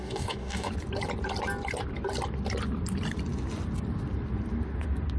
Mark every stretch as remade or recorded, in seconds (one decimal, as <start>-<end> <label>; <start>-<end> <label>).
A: 0.0-0.7 remade; 0.7-5.2 recorded